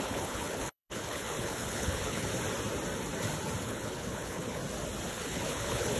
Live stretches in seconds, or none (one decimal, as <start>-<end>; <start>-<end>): 2.3-3.6; 4.6-5.1